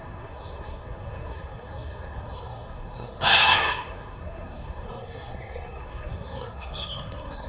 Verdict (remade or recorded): remade